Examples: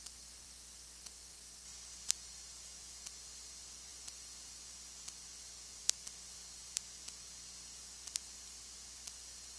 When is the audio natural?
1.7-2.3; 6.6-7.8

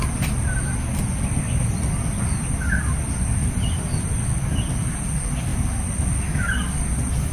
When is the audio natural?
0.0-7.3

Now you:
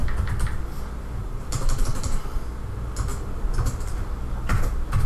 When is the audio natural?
0.0-1.2; 2.4-3.1; 4.1-5.1

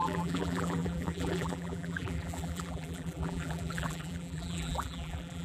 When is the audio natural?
none

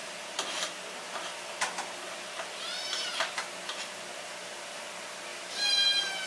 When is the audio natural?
3.8-5.3

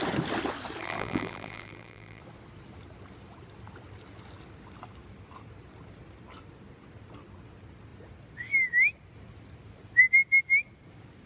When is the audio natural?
0.0-0.8; 2.2-11.3

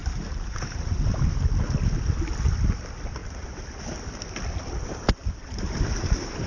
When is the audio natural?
1.3-3.2; 3.8-6.5

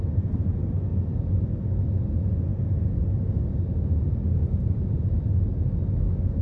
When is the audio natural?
0.0-0.9; 1.5-4.4; 5.1-6.4